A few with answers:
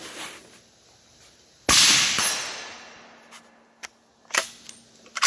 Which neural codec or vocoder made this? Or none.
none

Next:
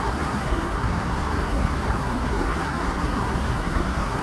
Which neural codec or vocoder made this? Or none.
codec, SNAC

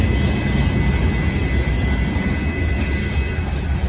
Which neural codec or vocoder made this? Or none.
none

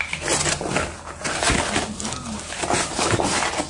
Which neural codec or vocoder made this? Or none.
none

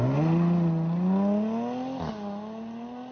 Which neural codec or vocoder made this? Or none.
none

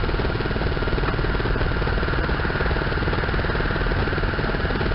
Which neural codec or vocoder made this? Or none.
none